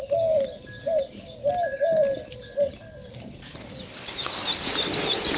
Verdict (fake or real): real